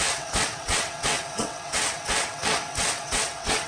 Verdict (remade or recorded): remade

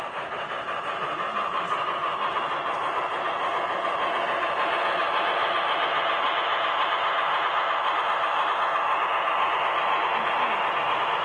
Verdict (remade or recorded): recorded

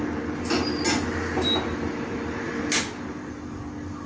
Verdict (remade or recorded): recorded